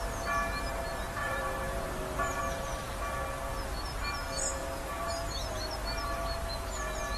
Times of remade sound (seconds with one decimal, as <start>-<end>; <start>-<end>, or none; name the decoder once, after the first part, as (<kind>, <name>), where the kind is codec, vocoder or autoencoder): 1.2-2.4 (vocoder, BigVGAN v2)